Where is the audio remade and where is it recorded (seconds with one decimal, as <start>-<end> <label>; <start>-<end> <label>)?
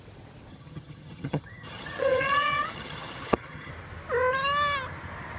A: 0.0-0.5 recorded; 0.5-3.7 remade; 3.7-5.4 recorded